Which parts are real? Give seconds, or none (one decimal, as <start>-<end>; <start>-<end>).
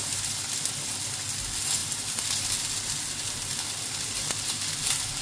0.0-5.2